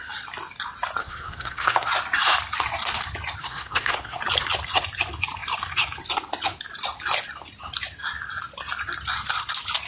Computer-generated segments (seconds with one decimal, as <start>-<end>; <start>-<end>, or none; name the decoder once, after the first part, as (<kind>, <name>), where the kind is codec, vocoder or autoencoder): 1.0-1.9 (codec, SNAC); 3.4-4.2